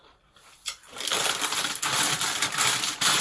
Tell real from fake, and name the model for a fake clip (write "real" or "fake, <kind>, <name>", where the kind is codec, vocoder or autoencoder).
fake, vocoder, BigVGAN v2